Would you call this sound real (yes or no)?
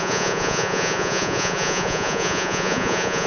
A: no